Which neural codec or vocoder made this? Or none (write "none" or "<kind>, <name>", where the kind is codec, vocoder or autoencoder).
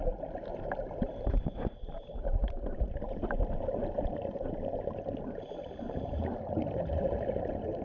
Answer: none